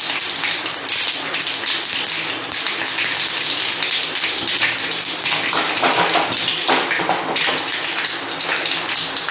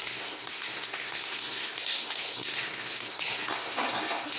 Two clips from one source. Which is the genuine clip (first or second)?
first